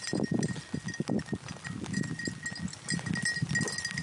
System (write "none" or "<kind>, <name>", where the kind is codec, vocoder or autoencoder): none